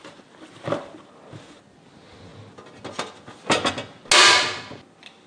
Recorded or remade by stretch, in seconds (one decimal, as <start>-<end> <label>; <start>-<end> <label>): 0.0-5.3 recorded